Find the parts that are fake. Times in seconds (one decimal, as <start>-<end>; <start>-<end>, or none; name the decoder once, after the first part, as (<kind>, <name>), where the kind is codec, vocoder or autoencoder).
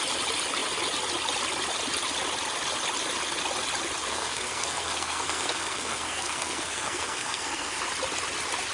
4.0-7.8 (codec, SNAC)